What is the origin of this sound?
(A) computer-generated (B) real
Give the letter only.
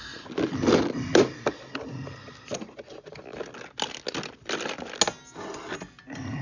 B